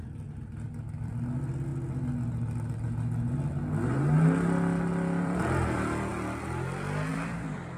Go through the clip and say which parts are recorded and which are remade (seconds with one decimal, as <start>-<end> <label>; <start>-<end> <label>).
0.0-1.7 remade; 1.7-5.2 recorded; 5.2-6.1 remade; 6.1-7.1 recorded; 7.1-7.8 remade